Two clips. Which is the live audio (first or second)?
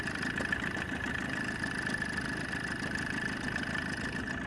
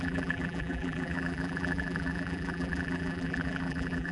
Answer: first